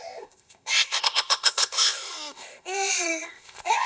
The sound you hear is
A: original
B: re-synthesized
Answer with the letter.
B